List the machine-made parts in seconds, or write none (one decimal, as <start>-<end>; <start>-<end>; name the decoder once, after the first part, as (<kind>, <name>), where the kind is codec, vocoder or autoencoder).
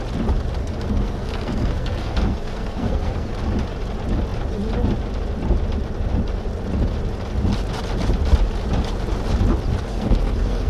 0.6-3.3 (codec, SNAC); 9.9-10.7